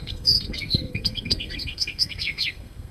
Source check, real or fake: fake